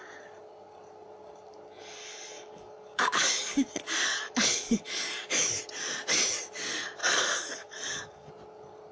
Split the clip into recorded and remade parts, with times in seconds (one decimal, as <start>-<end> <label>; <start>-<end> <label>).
0.0-2.0 recorded; 2.0-5.6 remade; 5.6-7.0 recorded; 7.0-8.3 remade; 8.3-8.9 recorded